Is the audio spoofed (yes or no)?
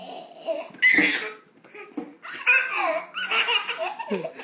no